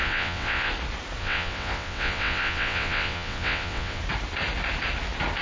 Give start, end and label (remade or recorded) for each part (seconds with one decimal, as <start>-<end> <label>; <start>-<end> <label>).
0.0-0.7 remade; 0.7-1.2 recorded; 1.2-4.0 remade; 4.0-5.4 recorded